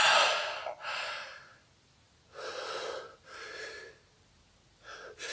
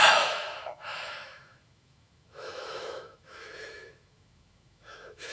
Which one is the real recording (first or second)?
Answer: first